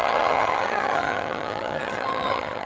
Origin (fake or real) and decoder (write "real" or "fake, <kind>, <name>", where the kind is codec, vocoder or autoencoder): fake, vocoder, HiFi-GAN